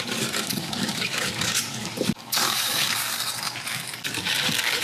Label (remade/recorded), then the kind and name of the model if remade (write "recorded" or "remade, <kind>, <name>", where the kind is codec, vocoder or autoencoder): remade, codec, DAC